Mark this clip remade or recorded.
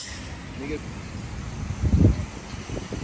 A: recorded